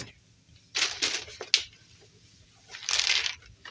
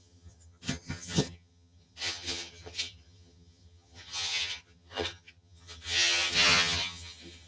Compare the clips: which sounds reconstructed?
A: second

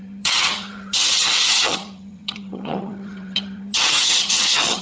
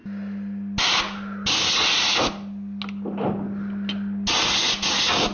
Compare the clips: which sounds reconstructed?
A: first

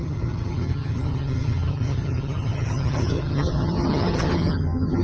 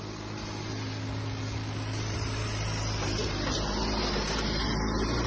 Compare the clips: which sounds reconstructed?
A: first